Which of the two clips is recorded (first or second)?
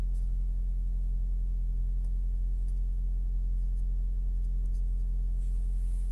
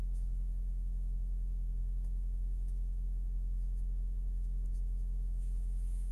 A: first